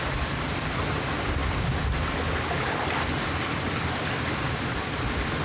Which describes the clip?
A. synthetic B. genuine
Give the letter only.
B